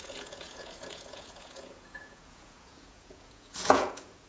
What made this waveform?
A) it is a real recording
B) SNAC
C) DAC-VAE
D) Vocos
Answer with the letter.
D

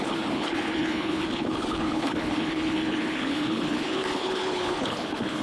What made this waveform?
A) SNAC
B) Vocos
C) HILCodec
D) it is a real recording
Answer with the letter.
C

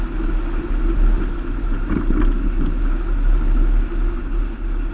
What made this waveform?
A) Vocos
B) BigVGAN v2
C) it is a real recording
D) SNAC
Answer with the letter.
C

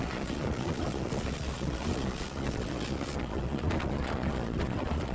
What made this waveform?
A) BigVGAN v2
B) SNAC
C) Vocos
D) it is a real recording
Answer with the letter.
C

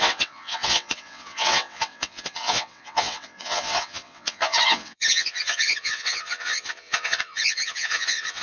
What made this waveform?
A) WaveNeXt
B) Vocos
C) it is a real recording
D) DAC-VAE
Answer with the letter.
A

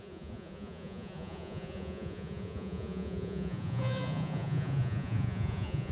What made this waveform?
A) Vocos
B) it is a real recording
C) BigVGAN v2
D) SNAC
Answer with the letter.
A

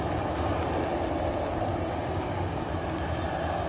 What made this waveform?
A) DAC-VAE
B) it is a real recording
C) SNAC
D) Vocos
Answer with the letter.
B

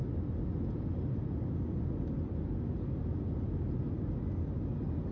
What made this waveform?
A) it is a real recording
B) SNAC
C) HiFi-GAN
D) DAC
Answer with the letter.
A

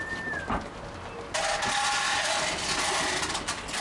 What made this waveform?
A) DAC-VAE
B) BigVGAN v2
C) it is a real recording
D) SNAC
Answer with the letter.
C